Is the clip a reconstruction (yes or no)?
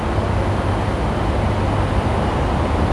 no